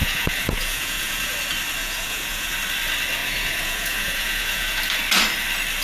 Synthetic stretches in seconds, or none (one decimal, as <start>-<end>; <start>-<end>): 0.0-1.3; 1.8-2.5; 3.2-4.8